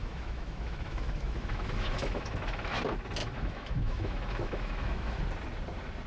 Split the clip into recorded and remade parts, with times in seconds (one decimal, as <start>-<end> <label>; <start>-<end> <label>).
0.0-2.8 remade; 2.8-3.2 recorded; 3.2-5.2 remade; 5.2-6.1 recorded